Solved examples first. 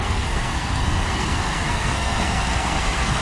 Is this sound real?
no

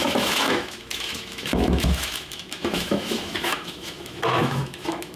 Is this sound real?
no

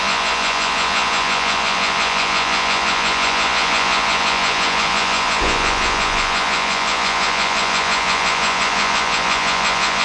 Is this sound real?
no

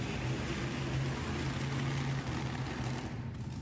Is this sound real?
yes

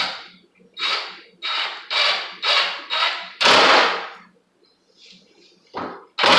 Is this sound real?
yes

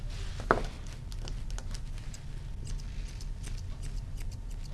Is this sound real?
yes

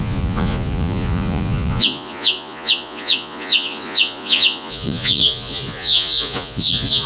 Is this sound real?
no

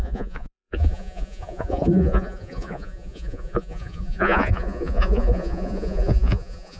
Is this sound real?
no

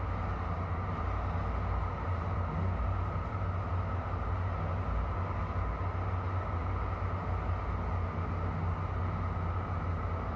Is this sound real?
yes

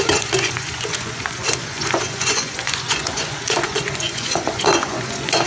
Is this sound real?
no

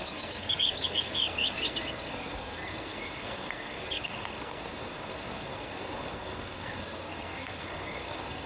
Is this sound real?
no